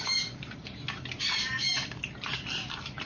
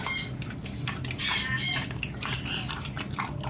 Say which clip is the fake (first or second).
first